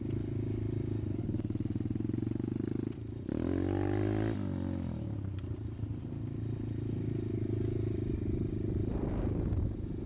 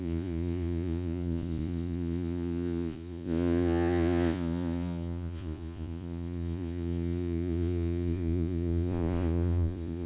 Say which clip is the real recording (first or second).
first